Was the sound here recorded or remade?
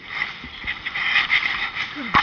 remade